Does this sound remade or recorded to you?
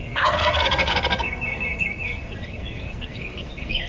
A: remade